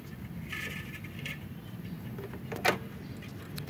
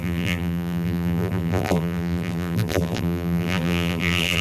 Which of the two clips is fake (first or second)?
second